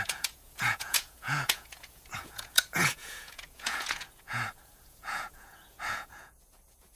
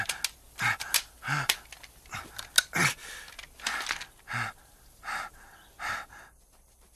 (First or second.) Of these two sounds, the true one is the second